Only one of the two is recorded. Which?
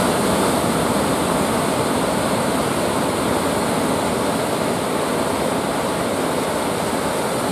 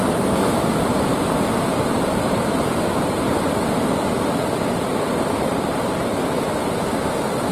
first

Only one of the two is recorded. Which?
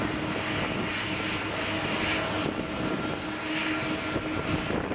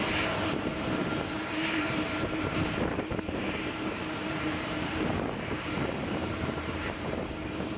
first